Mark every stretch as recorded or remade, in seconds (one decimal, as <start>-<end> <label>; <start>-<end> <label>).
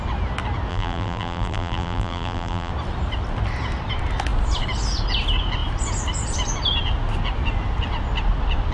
0.0-0.7 recorded; 0.7-2.7 remade; 2.7-8.7 recorded